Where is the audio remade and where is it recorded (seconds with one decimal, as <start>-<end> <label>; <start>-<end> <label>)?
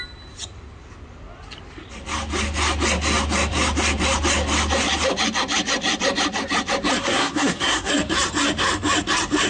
0.0-7.0 recorded; 7.0-7.9 remade; 7.9-9.5 recorded